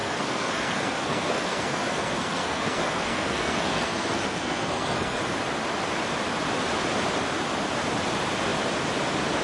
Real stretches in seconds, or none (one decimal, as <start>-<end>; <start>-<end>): 5.2-9.4